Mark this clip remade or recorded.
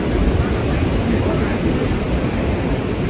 recorded